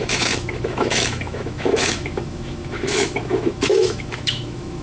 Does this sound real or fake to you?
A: fake